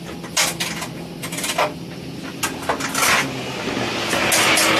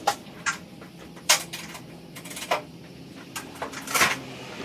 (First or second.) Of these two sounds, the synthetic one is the second